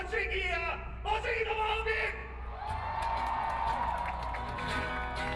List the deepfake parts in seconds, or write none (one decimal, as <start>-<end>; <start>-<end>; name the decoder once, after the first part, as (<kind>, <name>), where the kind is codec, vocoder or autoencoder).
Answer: 0.9-1.7 (vocoder, Vocos); 2.2-4.9